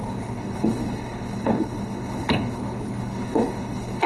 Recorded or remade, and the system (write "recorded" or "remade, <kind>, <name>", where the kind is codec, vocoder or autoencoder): remade, codec, HILCodec